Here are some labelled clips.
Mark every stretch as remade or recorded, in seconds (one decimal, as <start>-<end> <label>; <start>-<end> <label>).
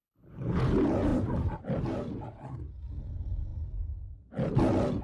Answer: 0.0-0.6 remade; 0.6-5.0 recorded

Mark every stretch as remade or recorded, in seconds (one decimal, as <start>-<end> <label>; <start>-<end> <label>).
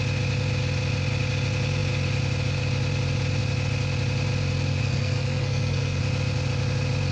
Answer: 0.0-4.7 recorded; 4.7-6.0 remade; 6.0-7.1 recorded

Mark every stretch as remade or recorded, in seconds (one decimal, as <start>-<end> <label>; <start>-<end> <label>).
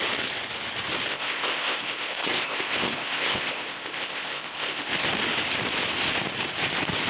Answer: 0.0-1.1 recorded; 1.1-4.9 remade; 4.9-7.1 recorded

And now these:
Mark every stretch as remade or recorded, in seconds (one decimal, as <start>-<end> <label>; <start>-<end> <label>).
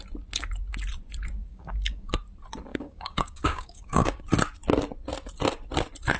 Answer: 0.0-1.5 recorded; 1.5-2.1 remade; 2.1-2.7 recorded; 2.7-4.2 remade; 4.2-6.2 recorded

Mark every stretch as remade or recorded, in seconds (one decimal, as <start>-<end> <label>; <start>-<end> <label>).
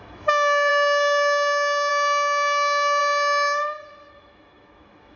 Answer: 0.0-3.0 remade; 3.0-4.1 recorded; 4.1-5.2 remade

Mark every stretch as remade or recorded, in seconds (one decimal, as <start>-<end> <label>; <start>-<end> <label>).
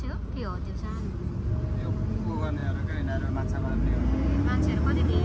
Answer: 0.0-5.2 recorded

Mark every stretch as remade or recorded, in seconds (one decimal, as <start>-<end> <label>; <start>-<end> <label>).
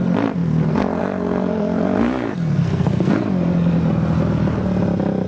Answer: 0.0-3.2 remade; 3.2-5.3 recorded